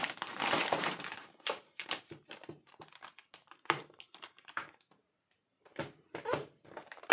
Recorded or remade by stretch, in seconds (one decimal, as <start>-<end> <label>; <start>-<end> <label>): 0.0-5.0 remade; 5.0-5.8 recorded; 5.8-7.1 remade